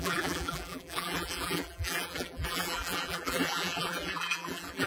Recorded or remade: remade